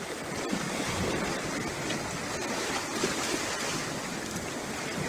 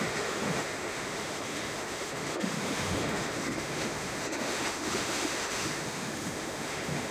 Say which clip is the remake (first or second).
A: second